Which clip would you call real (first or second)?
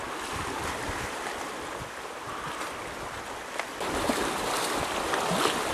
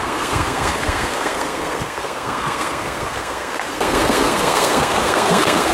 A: first